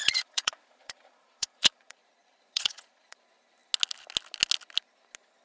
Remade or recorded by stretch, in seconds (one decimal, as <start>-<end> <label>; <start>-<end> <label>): 0.0-3.2 remade; 3.2-5.4 recorded